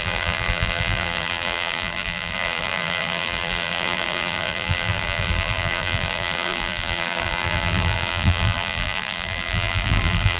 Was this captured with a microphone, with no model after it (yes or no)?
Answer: no